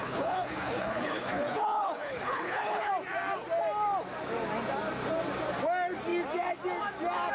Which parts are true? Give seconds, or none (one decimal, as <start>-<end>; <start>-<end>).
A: 2.9-7.3